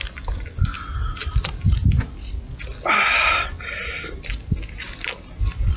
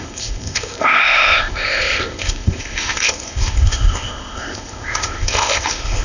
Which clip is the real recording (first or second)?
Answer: first